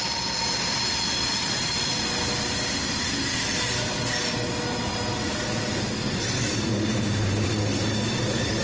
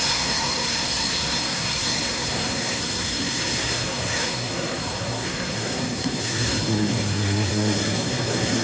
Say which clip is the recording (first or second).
first